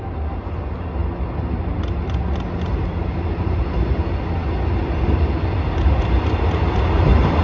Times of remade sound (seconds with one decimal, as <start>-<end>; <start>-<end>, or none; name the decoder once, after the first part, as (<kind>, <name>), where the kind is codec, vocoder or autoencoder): none